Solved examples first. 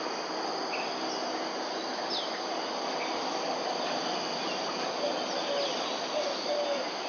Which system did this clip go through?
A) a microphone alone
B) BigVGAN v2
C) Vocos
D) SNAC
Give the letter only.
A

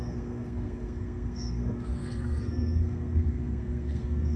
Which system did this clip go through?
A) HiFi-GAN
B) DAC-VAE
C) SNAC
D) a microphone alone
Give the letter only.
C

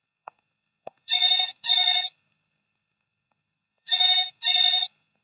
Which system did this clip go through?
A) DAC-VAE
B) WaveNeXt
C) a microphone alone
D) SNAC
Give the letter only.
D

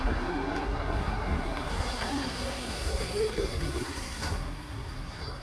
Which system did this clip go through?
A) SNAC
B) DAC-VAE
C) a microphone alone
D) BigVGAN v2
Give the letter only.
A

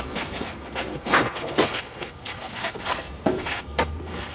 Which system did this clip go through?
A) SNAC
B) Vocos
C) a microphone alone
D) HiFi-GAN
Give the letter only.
A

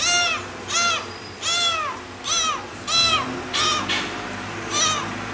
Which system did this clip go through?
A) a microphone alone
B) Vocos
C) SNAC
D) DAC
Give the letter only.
A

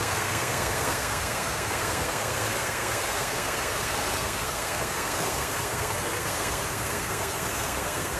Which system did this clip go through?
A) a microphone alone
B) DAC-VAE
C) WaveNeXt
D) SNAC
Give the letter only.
D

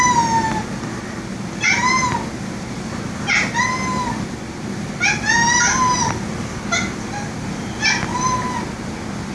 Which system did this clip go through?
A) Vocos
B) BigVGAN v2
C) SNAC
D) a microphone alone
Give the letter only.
D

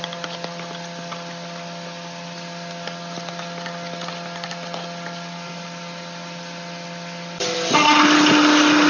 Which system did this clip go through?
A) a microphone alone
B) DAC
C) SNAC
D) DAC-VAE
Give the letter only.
A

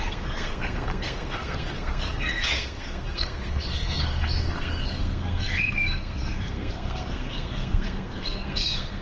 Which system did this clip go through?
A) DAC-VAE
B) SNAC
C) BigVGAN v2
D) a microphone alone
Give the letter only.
B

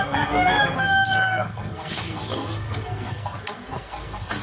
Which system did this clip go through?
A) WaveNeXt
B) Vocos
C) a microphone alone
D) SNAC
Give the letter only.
D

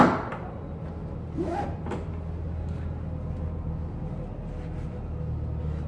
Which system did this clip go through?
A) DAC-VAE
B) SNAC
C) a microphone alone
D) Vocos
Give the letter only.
C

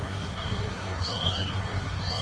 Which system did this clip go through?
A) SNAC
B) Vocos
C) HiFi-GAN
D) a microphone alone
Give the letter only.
A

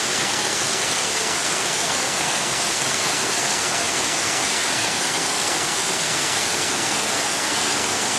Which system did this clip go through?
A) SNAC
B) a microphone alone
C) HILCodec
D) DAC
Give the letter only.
A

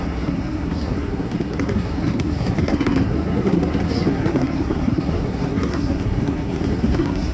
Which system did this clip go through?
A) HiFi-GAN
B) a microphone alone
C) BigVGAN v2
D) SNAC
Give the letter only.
D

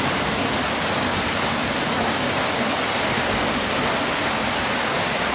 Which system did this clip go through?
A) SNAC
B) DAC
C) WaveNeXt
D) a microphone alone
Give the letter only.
D